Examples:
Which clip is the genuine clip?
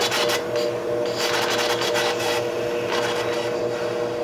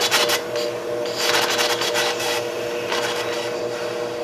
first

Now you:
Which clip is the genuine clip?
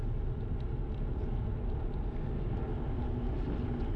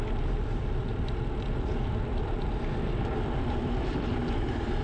first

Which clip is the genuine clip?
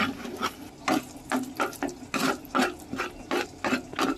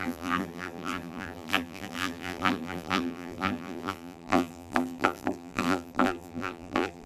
first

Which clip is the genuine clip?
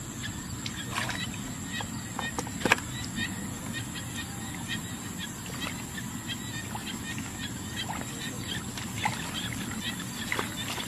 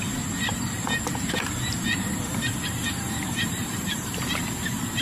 first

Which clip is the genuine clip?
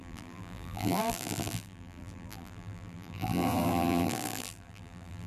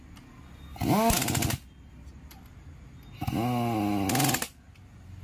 second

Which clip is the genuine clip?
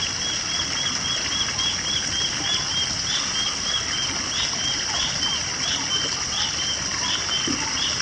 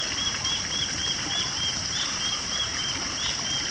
first